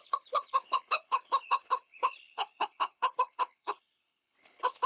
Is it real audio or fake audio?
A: fake